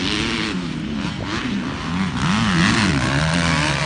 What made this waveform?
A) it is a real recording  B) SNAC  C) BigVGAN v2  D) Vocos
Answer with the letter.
A